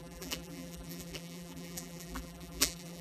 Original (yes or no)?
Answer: no